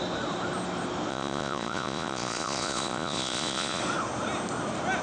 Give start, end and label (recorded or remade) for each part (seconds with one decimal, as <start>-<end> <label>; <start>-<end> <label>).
0.0-1.1 recorded; 1.1-3.8 remade; 3.8-5.0 recorded